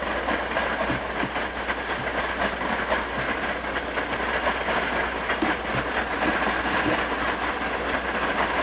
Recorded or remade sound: recorded